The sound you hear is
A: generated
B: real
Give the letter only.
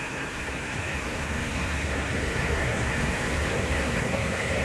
A